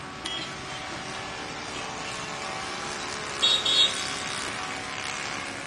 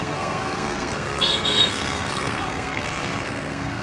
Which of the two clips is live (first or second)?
first